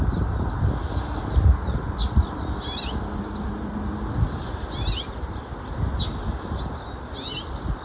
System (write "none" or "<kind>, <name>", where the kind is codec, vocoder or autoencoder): none